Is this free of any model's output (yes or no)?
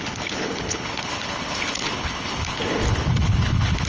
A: no